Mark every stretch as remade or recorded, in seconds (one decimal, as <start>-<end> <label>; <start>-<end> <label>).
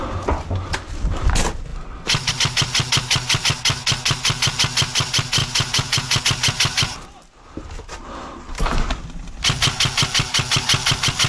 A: 0.0-5.4 recorded; 5.4-6.2 remade; 6.2-11.3 recorded